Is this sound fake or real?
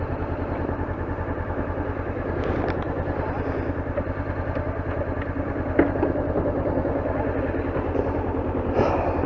real